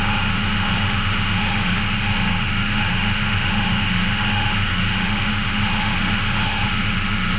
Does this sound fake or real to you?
fake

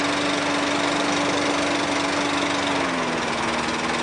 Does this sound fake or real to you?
real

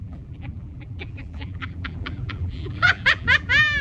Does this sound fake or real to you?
fake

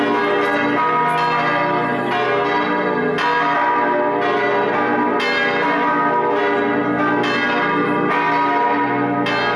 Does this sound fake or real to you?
real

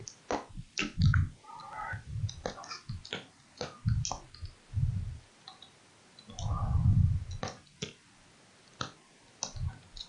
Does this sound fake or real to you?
real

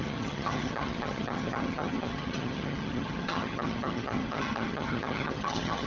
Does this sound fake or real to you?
fake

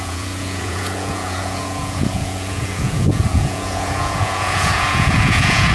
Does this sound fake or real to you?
fake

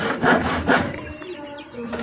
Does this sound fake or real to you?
fake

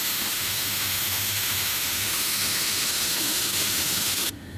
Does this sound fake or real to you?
fake